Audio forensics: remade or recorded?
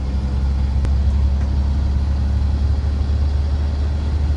recorded